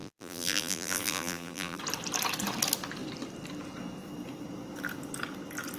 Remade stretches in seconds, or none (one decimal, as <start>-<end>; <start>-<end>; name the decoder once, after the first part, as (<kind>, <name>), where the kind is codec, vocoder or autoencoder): 0.0-1.8 (vocoder, BigVGAN v2)